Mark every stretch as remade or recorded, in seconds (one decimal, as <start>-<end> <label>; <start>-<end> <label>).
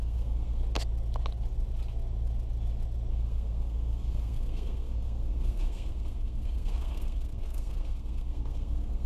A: 0.0-0.6 remade; 0.6-3.1 recorded; 3.1-9.1 remade